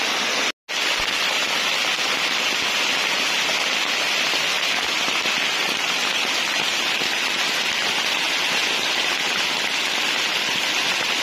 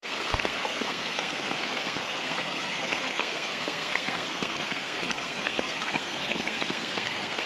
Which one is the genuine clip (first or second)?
first